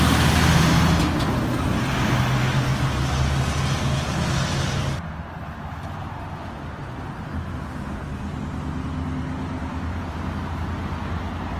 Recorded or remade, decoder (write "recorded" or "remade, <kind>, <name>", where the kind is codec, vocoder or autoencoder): recorded